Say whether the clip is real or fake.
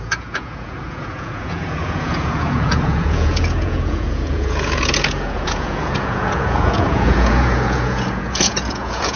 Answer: fake